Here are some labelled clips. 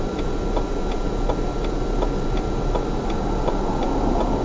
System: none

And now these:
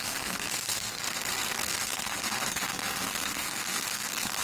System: codec, SNAC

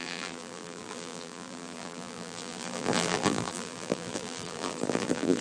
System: vocoder, BigVGAN v2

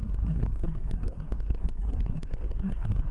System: codec, SNAC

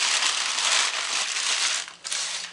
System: none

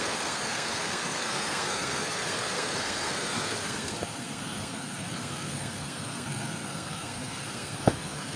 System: codec, SNAC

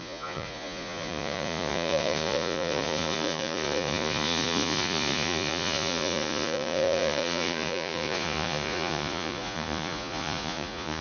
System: vocoder, Vocos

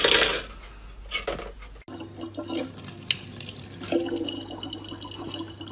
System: none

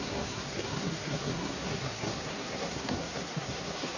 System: codec, SNAC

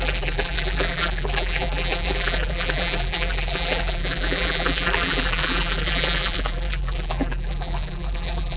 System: vocoder, BigVGAN v2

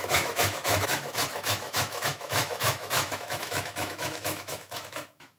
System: autoencoder, DAC-VAE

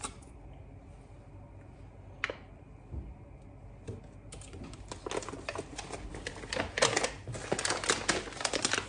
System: none